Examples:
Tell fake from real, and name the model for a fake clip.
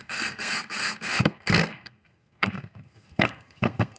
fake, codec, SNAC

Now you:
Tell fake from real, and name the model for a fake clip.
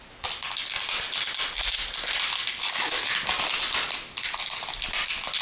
real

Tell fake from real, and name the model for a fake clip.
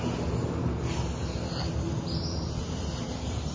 real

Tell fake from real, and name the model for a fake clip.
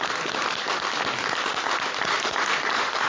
real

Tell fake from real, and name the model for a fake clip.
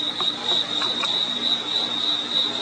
real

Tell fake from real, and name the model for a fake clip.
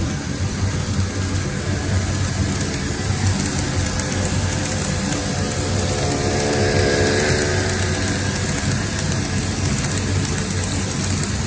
real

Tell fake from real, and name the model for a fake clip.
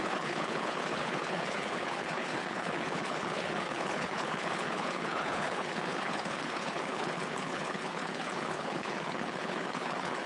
fake, codec, HILCodec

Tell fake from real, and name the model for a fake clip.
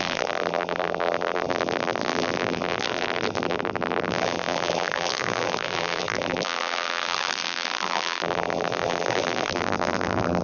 fake, vocoder, BigVGAN v2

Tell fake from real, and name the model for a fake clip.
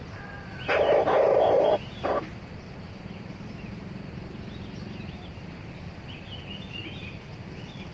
fake, vocoder, BigVGAN v2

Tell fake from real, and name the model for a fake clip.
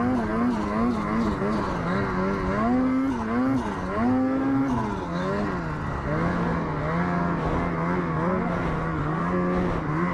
real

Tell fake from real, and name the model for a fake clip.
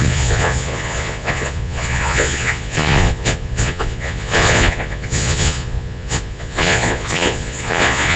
fake, vocoder, Vocos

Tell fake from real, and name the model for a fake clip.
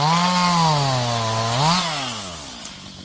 real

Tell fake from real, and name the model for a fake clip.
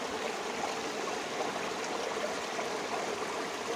real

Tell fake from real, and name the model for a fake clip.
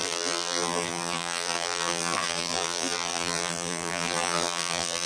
fake, vocoder, BigVGAN v2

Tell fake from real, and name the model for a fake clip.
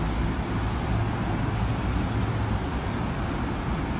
real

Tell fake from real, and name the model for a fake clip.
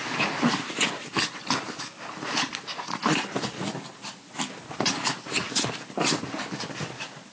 real